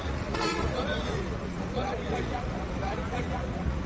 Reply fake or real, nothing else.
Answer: fake